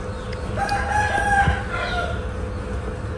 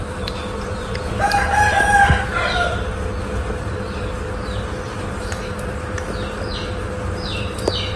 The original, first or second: first